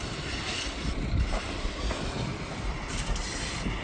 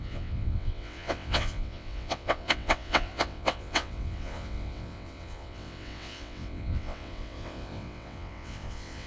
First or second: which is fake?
second